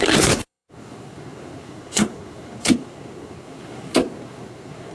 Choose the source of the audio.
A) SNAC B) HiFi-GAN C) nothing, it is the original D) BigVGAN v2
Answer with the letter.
A